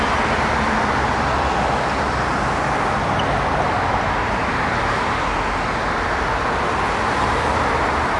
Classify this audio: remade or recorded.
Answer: recorded